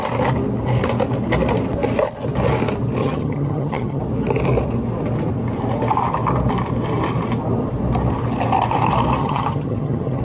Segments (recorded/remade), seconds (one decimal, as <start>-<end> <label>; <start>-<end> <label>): 0.0-3.0 recorded; 3.0-4.0 remade; 4.0-9.2 recorded; 9.2-10.2 remade